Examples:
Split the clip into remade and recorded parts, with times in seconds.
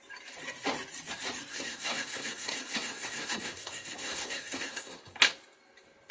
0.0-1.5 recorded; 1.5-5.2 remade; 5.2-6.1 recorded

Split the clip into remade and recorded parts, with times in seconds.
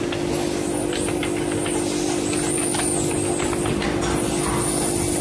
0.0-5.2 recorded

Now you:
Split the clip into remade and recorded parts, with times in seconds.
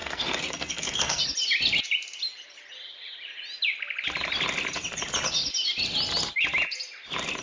0.0-1.2 remade; 1.2-7.4 recorded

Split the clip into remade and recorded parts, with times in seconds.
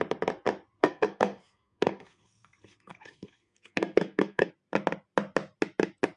0.0-0.8 recorded; 0.8-4.5 remade; 4.5-6.2 recorded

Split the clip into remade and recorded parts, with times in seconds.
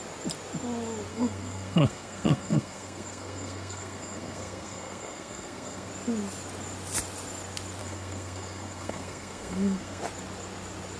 0.0-1.1 recorded; 1.1-5.9 remade; 5.9-7.8 recorded; 7.8-10.0 remade; 10.0-11.0 recorded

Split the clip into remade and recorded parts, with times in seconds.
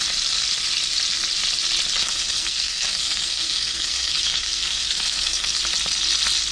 0.0-2.0 recorded; 2.0-5.6 remade; 5.6-6.5 recorded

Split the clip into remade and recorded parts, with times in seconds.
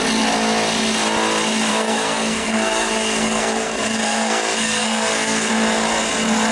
0.0-1.7 recorded; 1.7-5.5 remade; 5.5-6.5 recorded